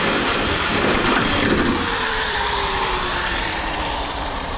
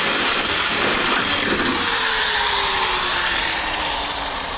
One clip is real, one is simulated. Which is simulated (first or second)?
first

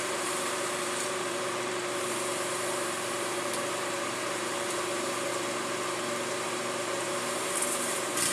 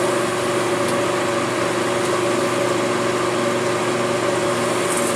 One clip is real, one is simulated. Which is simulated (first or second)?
first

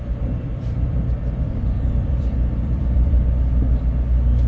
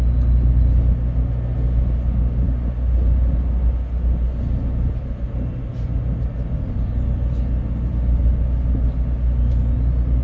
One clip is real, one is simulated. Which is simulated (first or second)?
first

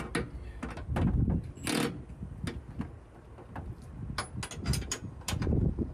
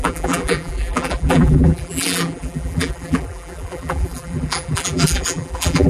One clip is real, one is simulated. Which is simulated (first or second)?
second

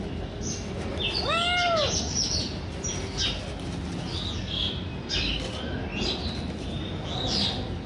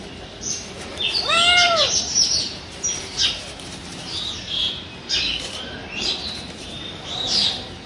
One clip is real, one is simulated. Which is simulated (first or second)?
second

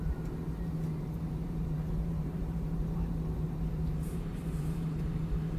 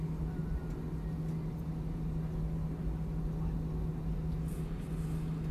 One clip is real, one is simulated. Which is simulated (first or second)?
first